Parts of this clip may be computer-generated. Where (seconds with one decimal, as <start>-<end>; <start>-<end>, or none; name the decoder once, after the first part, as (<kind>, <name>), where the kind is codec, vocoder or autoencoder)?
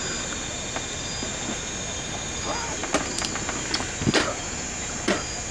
none